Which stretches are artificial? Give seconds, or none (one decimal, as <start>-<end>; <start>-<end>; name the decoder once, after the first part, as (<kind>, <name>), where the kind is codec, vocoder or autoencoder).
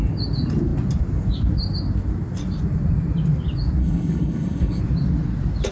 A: 3.8-4.8 (codec, HILCodec)